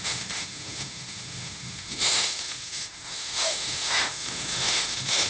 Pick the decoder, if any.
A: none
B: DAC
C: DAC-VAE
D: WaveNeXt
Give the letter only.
C